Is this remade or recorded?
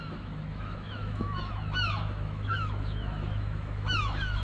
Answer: remade